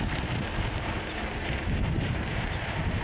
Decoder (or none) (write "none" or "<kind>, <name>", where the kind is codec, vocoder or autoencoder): vocoder, BigVGAN v2